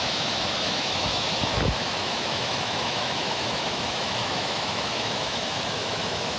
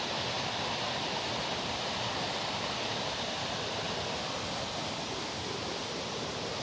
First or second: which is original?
second